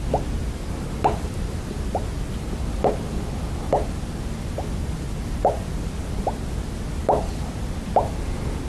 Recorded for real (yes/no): yes